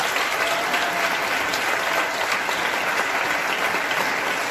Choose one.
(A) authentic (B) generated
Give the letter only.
A